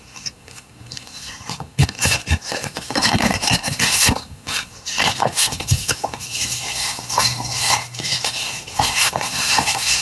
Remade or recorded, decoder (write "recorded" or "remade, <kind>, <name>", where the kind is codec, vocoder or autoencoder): remade, codec, SNAC